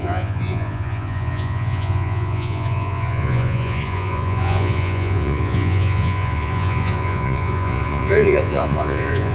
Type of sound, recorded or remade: remade